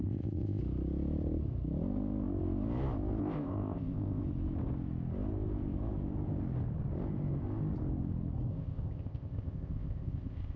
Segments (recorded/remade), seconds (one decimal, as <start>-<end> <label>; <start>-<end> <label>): 0.0-0.6 remade; 0.6-3.2 recorded; 3.2-4.2 remade; 4.2-8.5 recorded; 8.5-10.6 remade